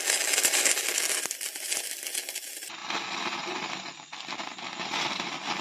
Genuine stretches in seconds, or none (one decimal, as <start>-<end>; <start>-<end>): 0.0-5.6